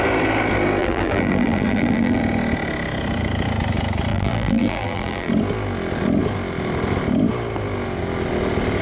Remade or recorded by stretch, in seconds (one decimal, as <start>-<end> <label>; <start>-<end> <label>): 0.0-0.8 recorded; 0.8-2.2 remade; 2.2-4.1 recorded; 4.1-5.3 remade; 5.3-8.8 recorded